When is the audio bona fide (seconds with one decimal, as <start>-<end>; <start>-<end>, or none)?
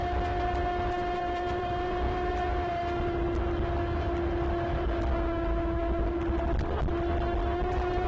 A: 0.0-1.2; 2.3-8.1